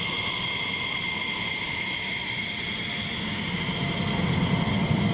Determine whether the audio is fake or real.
real